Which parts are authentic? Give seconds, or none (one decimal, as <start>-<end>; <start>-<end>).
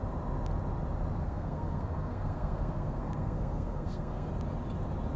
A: 0.0-1.2; 4.3-5.2